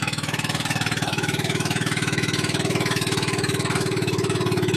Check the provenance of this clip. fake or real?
fake